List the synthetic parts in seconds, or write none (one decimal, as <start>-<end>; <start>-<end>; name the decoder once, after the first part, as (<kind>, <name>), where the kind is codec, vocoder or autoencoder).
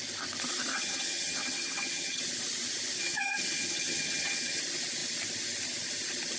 0.7-2.2 (vocoder, HiFi-GAN); 3.0-4.6